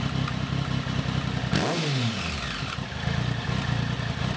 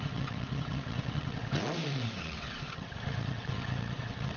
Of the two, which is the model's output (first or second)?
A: second